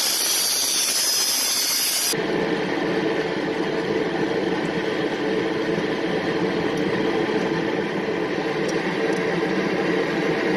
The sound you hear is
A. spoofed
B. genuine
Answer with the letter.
B